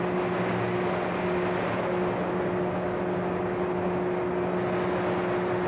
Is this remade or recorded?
recorded